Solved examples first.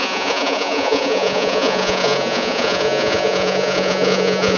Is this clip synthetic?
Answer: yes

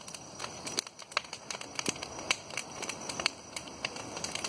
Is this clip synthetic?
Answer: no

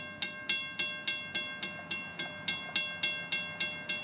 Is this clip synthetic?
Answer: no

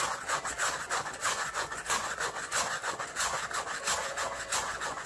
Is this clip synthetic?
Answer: yes